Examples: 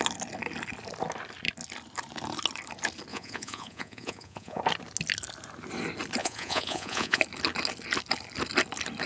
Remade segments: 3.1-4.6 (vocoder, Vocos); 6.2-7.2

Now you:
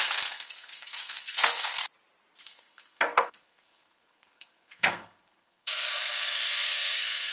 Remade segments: 0.0-1.8 (codec, SNAC); 2.4-7.3

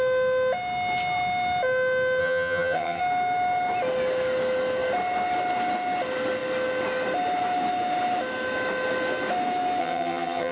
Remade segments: 2.2-3.0 (vocoder, HiFi-GAN); 9.8-10.5